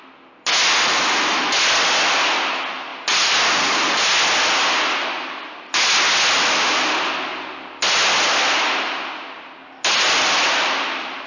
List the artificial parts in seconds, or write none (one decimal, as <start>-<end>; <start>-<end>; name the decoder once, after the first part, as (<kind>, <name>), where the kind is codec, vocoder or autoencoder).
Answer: none